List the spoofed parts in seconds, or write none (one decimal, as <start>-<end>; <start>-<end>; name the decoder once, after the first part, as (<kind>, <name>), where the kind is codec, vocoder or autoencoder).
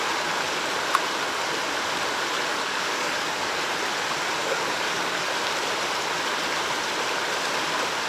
2.5-3.5 (codec, DAC); 4.4-5.3